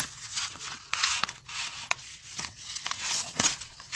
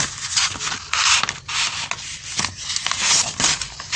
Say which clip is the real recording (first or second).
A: second